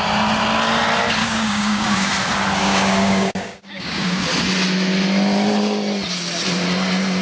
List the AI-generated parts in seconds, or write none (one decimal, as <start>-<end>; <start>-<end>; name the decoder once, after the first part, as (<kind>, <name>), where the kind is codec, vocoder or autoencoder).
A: 1.2-2.1 (codec, DAC); 2.6-4.2